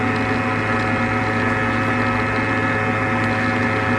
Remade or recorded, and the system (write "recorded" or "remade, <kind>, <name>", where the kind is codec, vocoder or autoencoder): recorded